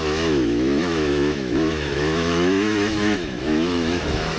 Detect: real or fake fake